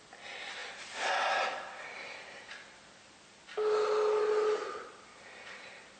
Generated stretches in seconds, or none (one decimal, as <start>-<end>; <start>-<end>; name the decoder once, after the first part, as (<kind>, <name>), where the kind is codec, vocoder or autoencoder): none